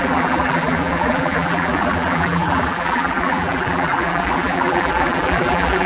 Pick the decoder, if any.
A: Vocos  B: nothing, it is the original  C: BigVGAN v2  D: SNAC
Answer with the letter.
C